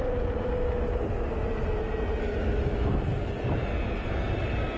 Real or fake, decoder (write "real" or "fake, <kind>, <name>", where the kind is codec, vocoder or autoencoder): real